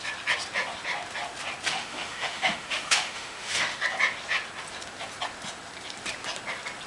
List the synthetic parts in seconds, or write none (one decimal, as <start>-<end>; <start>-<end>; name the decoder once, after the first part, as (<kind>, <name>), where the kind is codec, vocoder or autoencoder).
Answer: 1.7-3.8 (autoencoder, DAC-VAE)